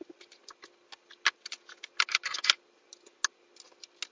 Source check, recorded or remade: recorded